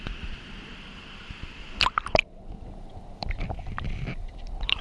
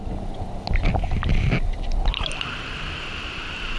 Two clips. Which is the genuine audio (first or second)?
second